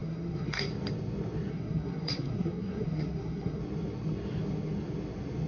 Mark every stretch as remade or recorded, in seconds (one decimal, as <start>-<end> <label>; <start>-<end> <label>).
0.0-0.7 remade; 0.7-1.5 recorded; 1.5-3.6 remade; 3.6-5.5 recorded